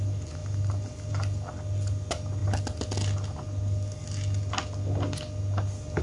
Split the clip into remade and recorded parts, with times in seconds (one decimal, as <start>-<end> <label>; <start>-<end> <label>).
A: 0.0-6.0 recorded